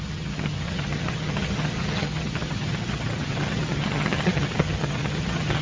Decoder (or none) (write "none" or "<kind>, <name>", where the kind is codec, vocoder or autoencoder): vocoder, HiFi-GAN